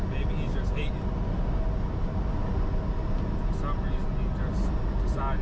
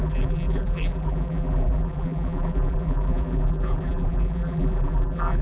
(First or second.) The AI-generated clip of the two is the second